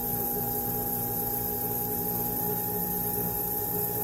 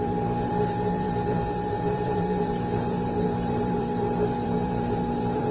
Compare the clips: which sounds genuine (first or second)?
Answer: first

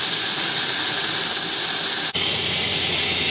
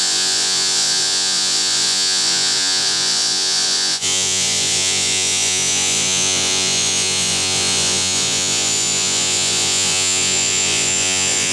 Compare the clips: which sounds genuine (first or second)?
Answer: first